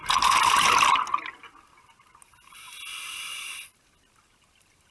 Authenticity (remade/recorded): recorded